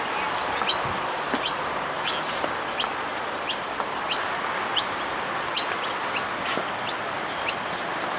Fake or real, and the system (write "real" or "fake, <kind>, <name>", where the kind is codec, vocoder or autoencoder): real